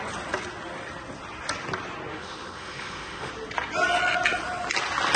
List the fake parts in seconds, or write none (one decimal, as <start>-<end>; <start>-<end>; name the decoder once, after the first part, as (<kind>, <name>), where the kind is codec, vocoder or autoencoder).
2.1-3.3 (autoencoder, DAC-VAE)